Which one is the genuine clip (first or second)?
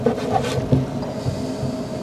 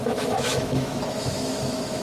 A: first